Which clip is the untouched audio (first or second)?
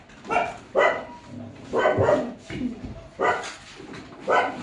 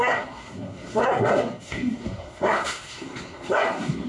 first